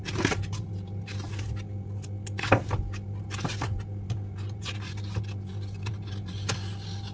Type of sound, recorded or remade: recorded